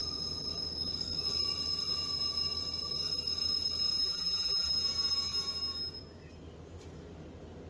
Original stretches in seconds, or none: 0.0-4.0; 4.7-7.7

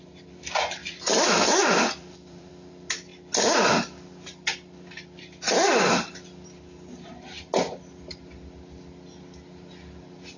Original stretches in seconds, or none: 0.0-0.8; 2.5-10.4

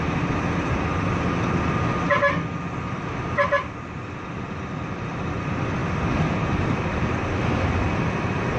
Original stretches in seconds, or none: 0.0-8.6

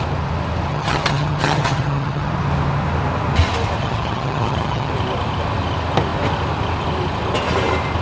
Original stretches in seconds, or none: 0.0-0.7; 2.3-3.8; 4.9-8.0

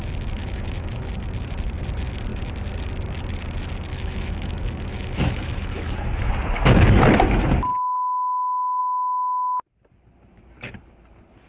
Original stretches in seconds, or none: 0.0-0.4; 1.1-3.9; 6.3-11.5

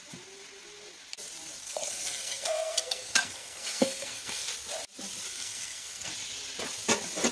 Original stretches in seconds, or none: 0.0-1.6; 4.5-5.3; 6.1-7.3

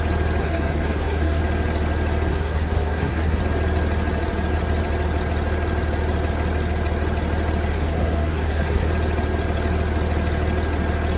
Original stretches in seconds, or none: 0.0-0.4; 1.4-2.3; 3.4-7.7; 8.9-11.2

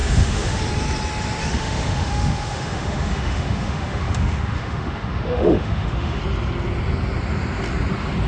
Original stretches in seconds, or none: 0.6-1.4; 6.2-8.3